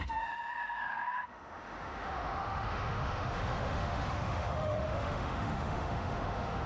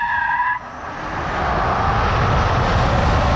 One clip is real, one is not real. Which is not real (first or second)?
first